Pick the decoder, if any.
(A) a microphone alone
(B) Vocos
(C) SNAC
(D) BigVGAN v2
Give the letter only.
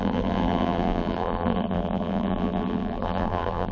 D